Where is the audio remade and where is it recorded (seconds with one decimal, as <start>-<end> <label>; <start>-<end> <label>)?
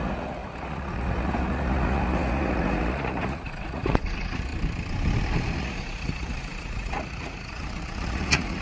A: 0.0-4.5 remade; 4.5-5.6 recorded; 5.6-8.6 remade